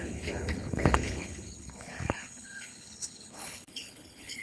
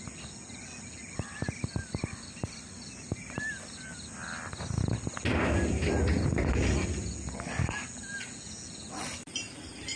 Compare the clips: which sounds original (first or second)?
second